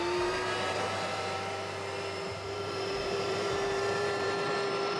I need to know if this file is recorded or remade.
remade